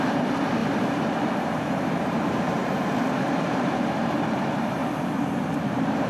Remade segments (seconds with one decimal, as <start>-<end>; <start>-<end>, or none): 0.0-4.8; 5.5-6.1